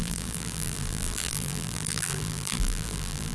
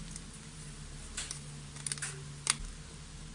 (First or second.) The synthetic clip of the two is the first